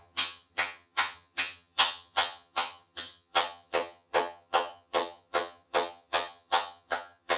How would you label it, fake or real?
fake